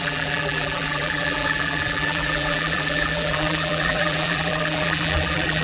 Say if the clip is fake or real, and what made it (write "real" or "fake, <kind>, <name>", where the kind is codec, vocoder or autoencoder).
fake, vocoder, BigVGAN v2